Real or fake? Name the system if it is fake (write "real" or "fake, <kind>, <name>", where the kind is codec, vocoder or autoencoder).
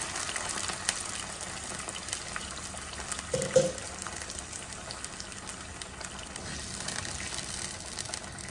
real